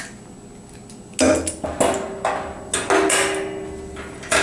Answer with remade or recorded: recorded